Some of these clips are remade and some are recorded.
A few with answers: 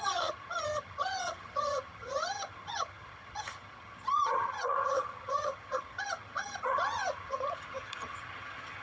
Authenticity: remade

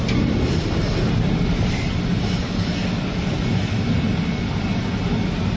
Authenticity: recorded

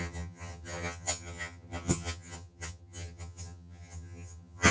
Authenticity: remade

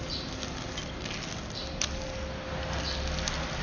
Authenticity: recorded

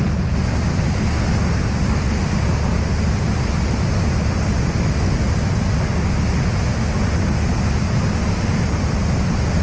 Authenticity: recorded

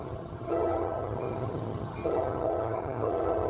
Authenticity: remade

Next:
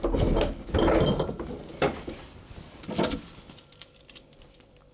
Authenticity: recorded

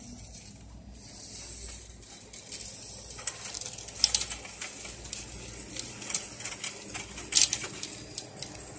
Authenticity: recorded